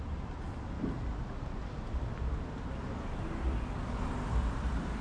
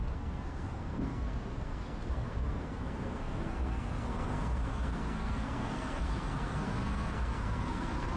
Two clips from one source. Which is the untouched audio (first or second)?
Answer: first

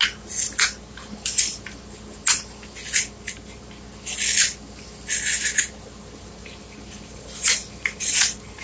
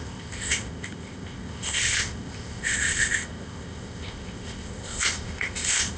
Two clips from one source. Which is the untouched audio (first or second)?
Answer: first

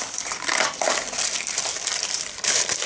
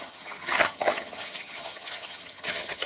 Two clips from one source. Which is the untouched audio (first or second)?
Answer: first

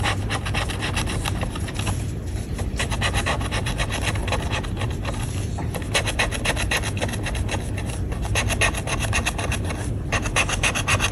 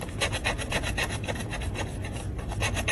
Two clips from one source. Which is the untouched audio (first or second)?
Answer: first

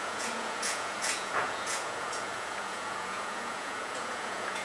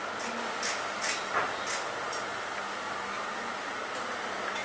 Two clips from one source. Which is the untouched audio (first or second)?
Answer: second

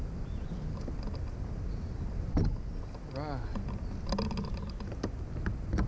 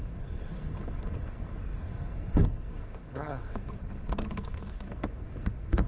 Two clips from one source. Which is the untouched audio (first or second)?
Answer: first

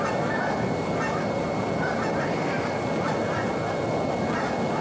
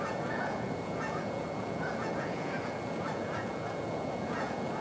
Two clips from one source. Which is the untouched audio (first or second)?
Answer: first